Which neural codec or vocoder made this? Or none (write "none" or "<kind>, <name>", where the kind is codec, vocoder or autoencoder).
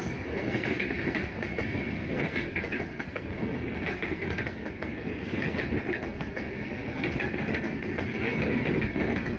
codec, SNAC